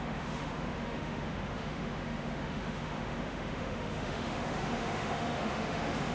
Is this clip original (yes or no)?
no